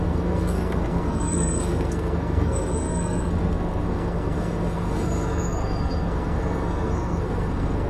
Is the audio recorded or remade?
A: remade